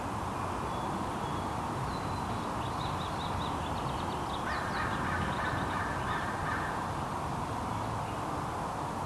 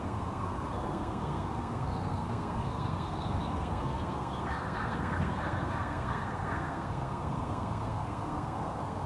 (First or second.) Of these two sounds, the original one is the first